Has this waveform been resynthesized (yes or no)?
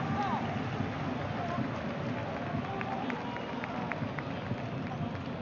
no